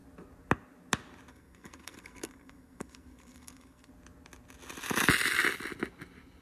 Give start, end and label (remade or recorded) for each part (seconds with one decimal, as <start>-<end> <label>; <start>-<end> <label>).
0.0-1.3 recorded; 1.3-3.9 remade; 3.9-6.4 recorded